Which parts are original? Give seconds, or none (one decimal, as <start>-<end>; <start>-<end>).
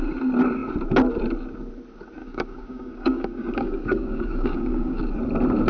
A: 0.0-2.2; 5.0-5.7